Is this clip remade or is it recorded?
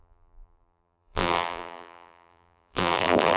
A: remade